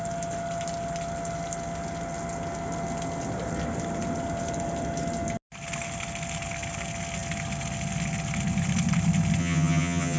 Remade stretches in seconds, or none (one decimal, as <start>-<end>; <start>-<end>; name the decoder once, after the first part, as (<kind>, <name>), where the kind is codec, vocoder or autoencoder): 9.4-10.2 (vocoder, HiFi-GAN)

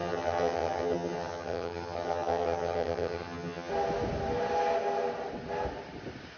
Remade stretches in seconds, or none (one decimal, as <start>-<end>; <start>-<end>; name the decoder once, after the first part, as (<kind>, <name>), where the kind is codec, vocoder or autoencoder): 0.0-3.7 (vocoder, HiFi-GAN)

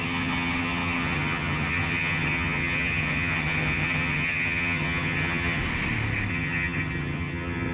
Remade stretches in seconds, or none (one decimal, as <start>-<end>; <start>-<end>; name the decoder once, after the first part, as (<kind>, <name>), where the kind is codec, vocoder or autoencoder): 0.0-5.6 (vocoder, HiFi-GAN); 6.3-7.7

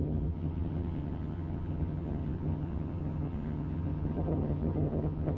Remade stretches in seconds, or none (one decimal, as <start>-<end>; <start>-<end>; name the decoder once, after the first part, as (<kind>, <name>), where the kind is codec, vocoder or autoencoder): 0.0-5.4 (vocoder, HiFi-GAN)

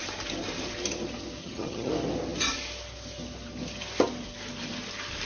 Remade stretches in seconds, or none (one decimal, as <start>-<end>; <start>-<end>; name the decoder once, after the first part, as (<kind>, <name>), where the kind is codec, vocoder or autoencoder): 1.4-1.9 (vocoder, HiFi-GAN)

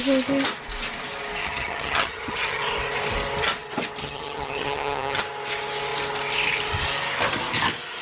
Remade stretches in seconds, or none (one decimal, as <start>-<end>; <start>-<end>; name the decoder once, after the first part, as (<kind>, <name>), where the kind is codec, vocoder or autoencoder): 1.4-2.6 (vocoder, HiFi-GAN); 4.0-5.2

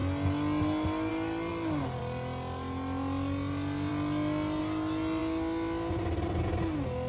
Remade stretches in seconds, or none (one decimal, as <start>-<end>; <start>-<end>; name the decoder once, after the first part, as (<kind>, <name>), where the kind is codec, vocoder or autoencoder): none

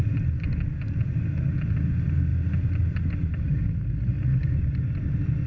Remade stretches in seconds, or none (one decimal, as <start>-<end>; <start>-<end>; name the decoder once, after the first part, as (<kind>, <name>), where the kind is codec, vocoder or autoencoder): none